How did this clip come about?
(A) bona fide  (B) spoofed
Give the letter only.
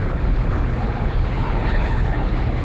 B